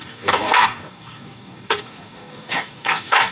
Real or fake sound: fake